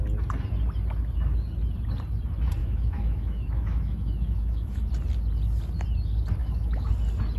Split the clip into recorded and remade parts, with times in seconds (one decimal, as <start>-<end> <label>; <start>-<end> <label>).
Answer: 0.0-2.6 recorded; 2.6-4.9 remade; 4.9-6.4 recorded; 6.4-6.9 remade; 6.9-7.4 recorded